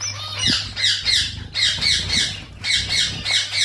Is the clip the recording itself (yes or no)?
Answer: yes